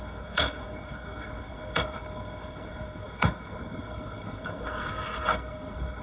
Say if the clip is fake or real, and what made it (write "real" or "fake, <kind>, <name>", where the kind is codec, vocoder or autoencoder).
fake, codec, SNAC